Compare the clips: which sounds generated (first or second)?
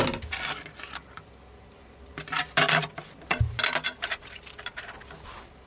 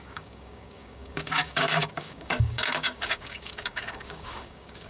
second